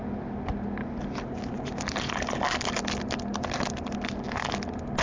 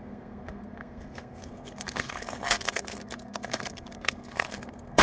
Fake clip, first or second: second